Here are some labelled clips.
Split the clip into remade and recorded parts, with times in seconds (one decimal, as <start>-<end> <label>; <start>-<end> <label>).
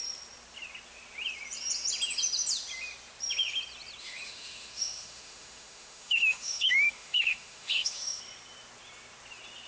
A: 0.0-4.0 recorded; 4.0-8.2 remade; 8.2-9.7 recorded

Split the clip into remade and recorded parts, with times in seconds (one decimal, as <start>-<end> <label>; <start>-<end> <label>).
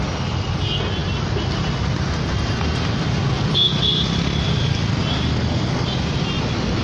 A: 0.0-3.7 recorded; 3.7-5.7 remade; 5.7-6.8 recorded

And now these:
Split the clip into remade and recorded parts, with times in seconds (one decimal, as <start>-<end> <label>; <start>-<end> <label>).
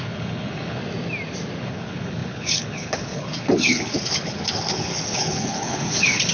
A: 0.0-0.8 remade; 0.8-1.6 recorded; 1.6-6.3 remade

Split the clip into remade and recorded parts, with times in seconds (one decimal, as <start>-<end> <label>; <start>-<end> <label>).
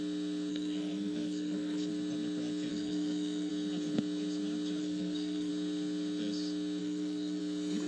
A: 0.0-0.5 recorded; 0.5-1.9 remade; 1.9-2.7 recorded; 2.7-3.5 remade; 3.5-4.8 recorded; 4.8-5.5 remade; 5.5-6.8 recorded; 6.8-7.4 remade; 7.4-7.9 recorded